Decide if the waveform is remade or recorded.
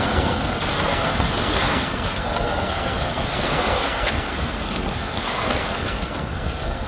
remade